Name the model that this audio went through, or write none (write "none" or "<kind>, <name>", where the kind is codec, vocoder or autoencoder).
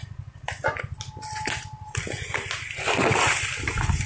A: none